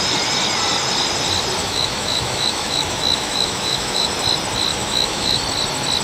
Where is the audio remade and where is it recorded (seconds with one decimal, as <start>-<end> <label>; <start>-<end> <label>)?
0.0-1.6 recorded; 1.6-4.1 remade; 4.1-4.7 recorded; 4.7-5.4 remade; 5.4-6.0 recorded